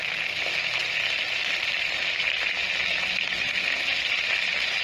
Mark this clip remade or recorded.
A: recorded